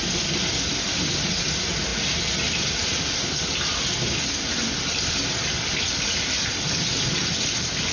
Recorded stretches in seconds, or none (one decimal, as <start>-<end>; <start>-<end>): 0.0-7.9

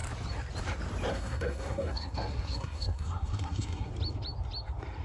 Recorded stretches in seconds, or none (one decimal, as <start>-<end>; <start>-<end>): 0.0-1.1; 3.9-5.0

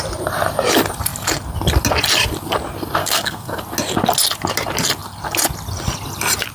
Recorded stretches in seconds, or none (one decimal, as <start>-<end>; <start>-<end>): 0.0-3.0; 3.6-6.5

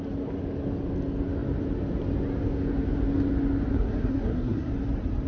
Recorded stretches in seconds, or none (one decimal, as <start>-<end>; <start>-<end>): 0.0-3.7; 4.7-5.3